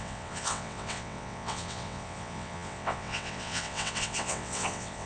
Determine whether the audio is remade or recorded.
remade